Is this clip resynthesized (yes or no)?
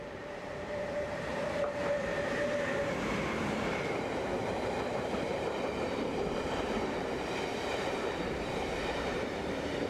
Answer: yes